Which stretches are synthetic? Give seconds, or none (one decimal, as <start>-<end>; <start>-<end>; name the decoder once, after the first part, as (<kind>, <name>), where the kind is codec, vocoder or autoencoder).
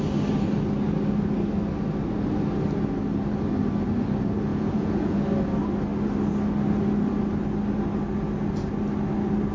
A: 4.5-5.2 (vocoder, Vocos)